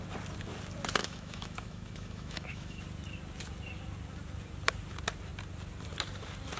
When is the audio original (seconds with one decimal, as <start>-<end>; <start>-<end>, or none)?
0.0-1.0; 2.8-6.6